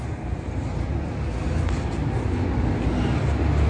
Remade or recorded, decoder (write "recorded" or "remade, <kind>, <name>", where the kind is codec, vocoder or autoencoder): recorded